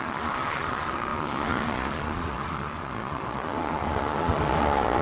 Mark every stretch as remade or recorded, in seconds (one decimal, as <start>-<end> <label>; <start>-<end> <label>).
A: 0.0-5.0 remade